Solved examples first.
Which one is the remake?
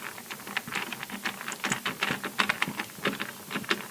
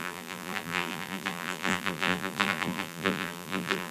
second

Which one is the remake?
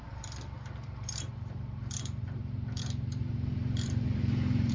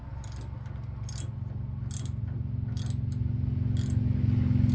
first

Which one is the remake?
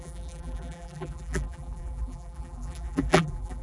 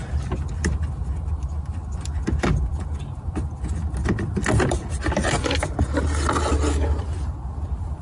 first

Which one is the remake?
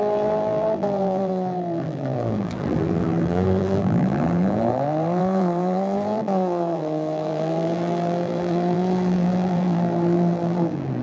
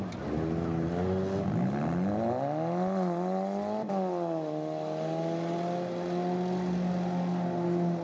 first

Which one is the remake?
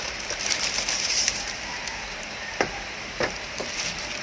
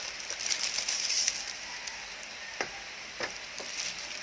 first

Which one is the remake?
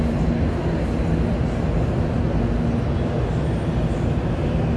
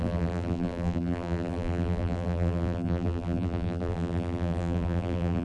second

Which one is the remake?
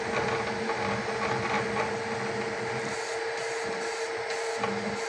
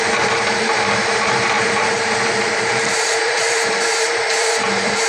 second